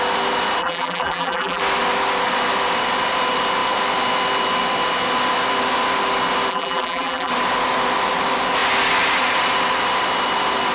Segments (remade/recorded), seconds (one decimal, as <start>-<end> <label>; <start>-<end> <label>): 0.0-0.6 recorded; 0.6-1.6 remade; 1.6-6.5 recorded; 6.5-7.3 remade; 7.3-10.7 recorded